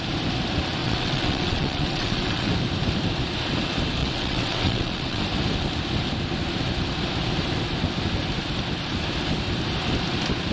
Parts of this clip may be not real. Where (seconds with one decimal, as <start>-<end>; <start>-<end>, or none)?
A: 0.8-2.5; 4.0-5.2